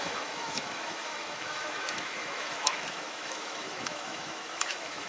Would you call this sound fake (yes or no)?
yes